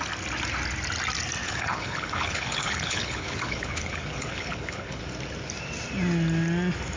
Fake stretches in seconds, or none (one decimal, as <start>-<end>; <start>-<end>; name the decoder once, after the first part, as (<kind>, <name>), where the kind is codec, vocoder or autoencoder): 1.4-5.0 (codec, HILCodec)